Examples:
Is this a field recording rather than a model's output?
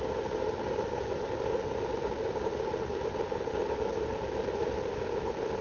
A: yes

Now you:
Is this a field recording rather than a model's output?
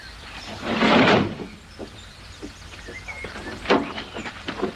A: no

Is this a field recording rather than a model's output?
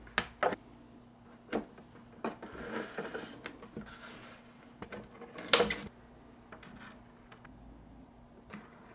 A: yes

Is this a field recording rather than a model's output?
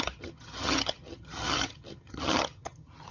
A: no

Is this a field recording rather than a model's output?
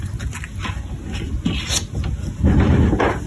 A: yes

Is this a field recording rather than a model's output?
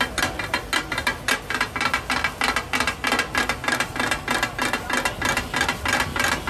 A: yes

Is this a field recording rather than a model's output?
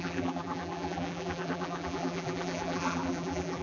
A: no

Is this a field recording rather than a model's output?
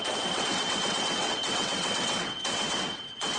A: no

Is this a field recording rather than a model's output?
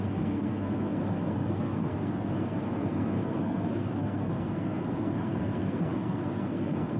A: no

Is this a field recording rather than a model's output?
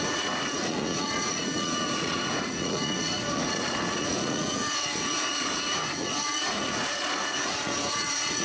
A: no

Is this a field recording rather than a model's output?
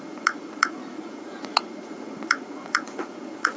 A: no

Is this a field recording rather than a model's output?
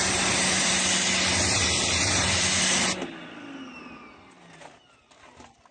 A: yes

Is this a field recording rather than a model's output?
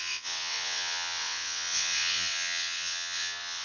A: no